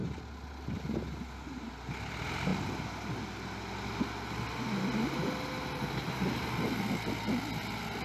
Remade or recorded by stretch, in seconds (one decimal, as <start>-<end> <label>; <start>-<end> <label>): 0.0-8.0 recorded